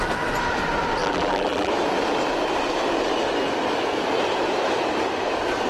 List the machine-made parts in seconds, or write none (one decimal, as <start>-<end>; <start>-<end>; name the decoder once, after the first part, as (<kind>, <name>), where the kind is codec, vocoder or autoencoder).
1.0-1.7 (vocoder, BigVGAN v2)